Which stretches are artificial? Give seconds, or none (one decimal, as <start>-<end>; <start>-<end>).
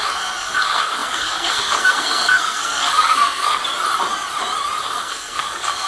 0.0-3.6; 4.8-5.9